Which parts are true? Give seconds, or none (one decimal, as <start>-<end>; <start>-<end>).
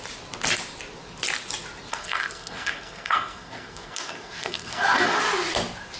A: 0.0-1.9; 5.2-6.0